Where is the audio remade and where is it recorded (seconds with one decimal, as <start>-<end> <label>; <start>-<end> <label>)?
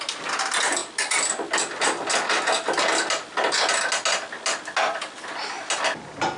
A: 0.0-6.4 recorded